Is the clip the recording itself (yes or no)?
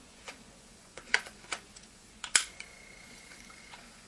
no